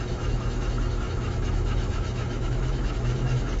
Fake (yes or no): yes